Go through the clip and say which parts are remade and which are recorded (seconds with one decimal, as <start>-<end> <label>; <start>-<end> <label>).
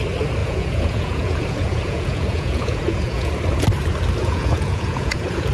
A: 0.0-0.4 recorded; 0.4-3.3 remade; 3.3-4.2 recorded; 4.2-5.5 remade